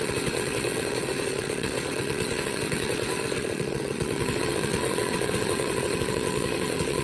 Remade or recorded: remade